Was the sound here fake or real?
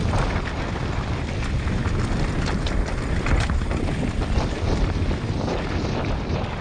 real